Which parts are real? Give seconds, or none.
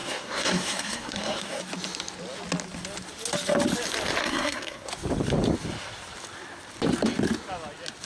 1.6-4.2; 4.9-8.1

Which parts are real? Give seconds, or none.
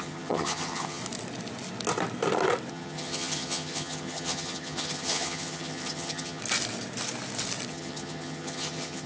1.0-2.7; 6.4-7.7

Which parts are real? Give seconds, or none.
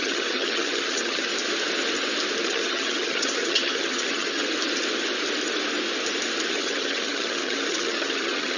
1.3-2.4; 4.4-6.5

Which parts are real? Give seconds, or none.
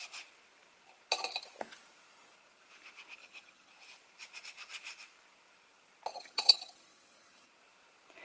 0.0-3.2; 3.7-6.1; 7.5-8.2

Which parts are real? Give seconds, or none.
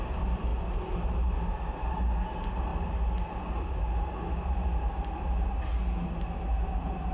0.0-7.1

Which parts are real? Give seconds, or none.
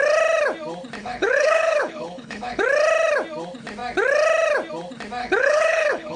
0.0-1.0; 2.6-5.2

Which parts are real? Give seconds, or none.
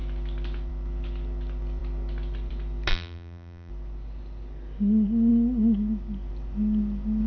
0.0-2.9; 3.7-7.3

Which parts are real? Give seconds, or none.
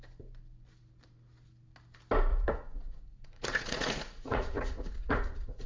0.0-2.3